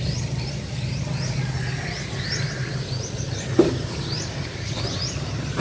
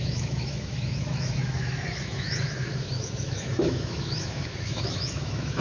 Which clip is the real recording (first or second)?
first